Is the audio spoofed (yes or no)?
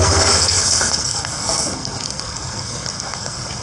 yes